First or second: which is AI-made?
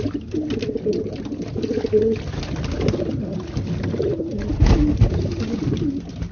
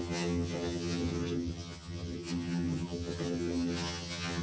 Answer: second